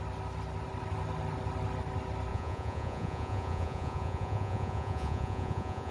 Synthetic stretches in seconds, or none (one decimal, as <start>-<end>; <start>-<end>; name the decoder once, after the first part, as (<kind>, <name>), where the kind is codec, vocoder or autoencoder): 2.3-5.9 (vocoder, Vocos)